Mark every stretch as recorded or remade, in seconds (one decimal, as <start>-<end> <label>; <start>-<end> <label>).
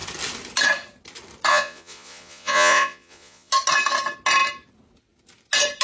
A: 0.0-1.5 recorded; 1.5-3.5 remade; 3.5-5.8 recorded